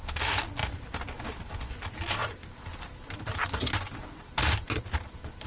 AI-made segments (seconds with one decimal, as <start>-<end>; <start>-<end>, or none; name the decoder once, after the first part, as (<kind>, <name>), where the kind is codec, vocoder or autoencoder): none